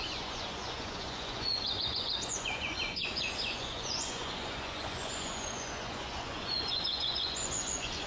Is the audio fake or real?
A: fake